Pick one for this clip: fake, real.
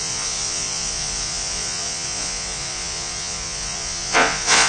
fake